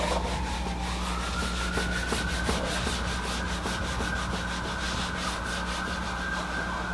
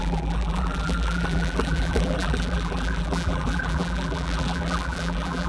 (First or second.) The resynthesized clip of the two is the second